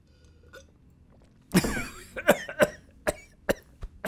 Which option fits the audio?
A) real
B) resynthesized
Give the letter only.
A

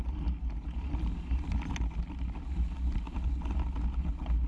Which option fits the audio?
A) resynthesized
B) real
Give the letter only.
B